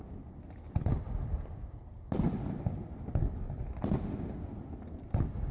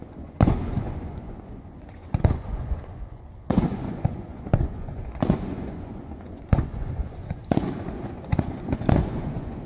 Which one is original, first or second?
first